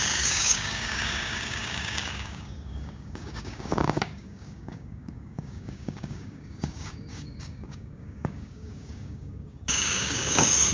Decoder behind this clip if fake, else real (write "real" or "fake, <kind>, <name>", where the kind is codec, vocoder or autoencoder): fake, codec, DAC